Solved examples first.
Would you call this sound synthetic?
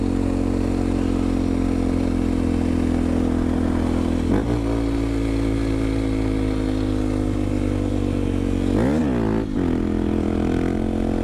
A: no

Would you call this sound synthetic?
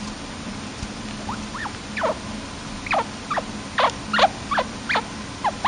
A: no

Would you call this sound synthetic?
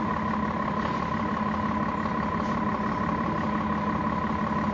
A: no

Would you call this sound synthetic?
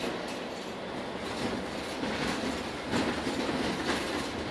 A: no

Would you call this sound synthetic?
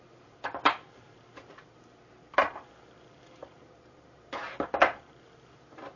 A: yes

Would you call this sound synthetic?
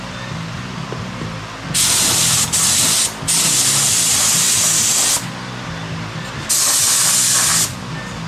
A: no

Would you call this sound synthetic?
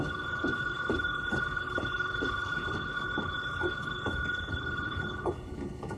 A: yes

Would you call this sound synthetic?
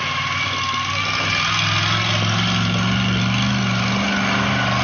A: no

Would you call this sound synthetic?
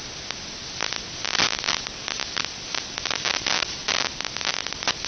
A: no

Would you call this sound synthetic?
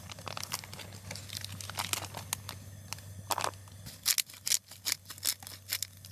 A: no